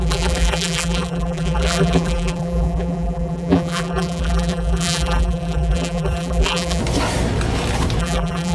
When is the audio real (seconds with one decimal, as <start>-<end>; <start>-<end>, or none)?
6.8-8.0